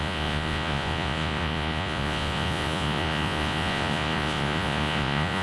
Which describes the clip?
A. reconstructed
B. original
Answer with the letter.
A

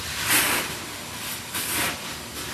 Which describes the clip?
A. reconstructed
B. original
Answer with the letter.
B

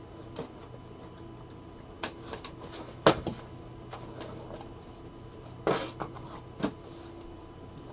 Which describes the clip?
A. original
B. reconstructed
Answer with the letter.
A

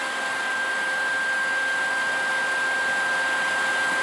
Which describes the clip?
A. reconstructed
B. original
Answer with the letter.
B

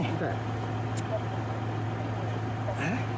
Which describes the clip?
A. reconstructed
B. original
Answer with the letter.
B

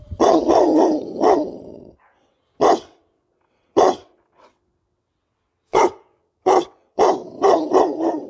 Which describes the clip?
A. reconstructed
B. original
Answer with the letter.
A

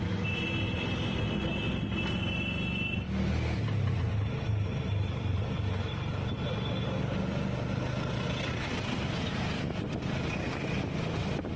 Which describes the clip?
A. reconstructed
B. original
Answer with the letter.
B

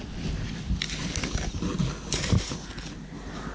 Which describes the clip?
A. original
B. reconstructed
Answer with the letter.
A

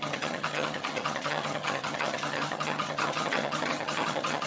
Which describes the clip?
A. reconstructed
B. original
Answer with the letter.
A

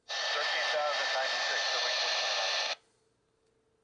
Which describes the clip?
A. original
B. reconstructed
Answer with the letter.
A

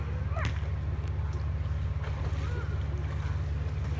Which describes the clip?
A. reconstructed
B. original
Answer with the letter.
B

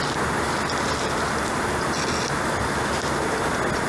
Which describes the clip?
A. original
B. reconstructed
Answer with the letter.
A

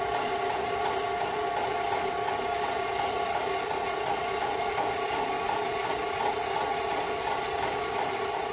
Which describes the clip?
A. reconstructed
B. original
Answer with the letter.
B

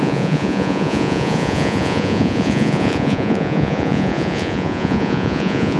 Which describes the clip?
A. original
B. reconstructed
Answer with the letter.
B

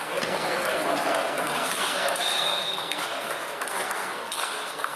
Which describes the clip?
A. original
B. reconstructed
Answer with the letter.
B